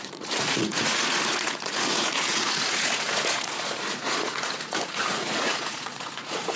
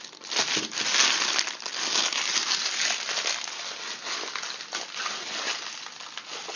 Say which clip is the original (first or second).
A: second